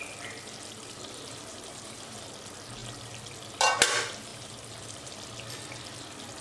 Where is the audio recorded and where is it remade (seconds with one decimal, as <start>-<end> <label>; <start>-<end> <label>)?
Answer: 0.0-1.5 recorded; 1.5-2.2 remade; 2.2-4.3 recorded; 4.3-5.1 remade; 5.1-6.4 recorded